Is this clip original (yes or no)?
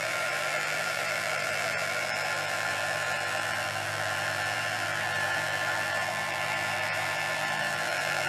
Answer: no